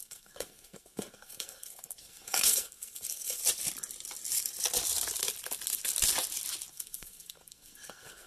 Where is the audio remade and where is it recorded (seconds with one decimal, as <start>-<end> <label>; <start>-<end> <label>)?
0.0-3.4 remade; 3.4-6.7 recorded; 6.7-8.3 remade